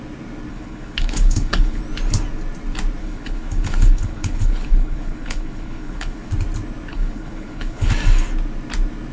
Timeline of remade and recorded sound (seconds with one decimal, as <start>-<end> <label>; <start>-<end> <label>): 0.0-0.5 recorded; 0.5-1.8 remade; 1.8-3.0 recorded; 3.0-6.3 remade; 6.3-6.9 recorded; 6.9-7.9 remade; 7.9-9.1 recorded